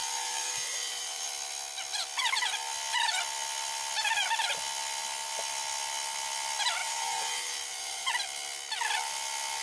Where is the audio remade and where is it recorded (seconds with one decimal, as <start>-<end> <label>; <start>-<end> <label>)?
0.0-1.3 remade; 1.3-6.8 recorded; 6.8-8.1 remade; 8.1-9.6 recorded